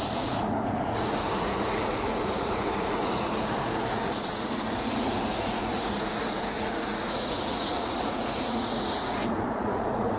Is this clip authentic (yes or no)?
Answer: no